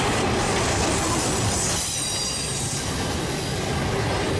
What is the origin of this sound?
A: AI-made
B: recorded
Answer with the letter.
B